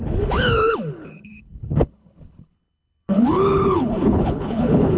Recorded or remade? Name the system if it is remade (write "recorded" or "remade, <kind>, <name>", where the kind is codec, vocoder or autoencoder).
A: remade, codec, HILCodec